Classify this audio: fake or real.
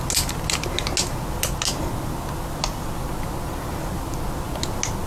real